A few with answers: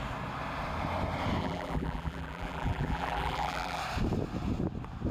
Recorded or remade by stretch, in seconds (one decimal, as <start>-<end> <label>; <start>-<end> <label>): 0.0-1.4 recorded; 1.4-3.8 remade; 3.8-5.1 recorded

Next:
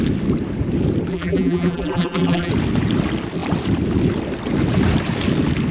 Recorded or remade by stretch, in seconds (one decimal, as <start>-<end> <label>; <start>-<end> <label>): 0.0-1.1 recorded; 1.1-2.5 remade; 2.5-5.7 recorded

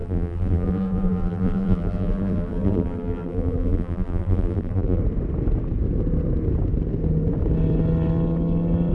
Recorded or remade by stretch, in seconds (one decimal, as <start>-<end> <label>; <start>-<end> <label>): 0.0-5.0 remade; 5.0-8.9 recorded

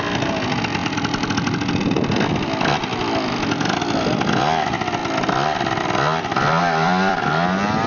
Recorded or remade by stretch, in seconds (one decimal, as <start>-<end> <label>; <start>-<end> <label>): 0.0-0.8 recorded; 0.8-3.5 remade; 3.5-5.0 recorded; 5.0-7.2 remade; 7.2-7.9 recorded

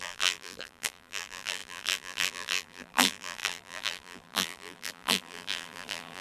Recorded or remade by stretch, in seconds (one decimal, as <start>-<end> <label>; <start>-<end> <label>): 0.0-6.2 remade

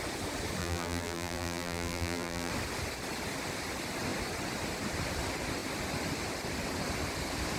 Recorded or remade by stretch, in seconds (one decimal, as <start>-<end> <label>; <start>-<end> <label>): 0.0-0.6 recorded; 0.6-2.5 remade; 2.5-7.6 recorded

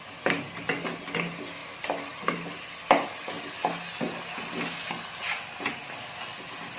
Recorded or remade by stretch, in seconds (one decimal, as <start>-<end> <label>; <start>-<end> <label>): 0.0-6.8 recorded

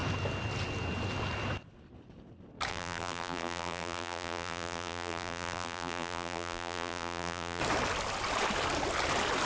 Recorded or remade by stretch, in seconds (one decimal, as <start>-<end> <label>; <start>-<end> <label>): 0.0-2.7 recorded; 2.7-7.6 remade; 7.6-9.5 recorded